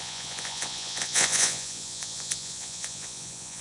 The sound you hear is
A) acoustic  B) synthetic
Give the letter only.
B